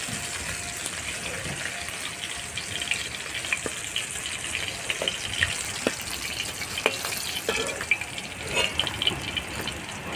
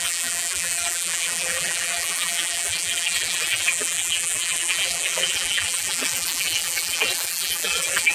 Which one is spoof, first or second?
second